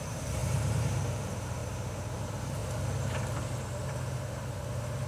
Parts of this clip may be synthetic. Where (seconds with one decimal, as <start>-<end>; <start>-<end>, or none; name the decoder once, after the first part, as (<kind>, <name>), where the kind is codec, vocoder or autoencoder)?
0.0-2.6 (vocoder, BigVGAN v2); 3.4-5.1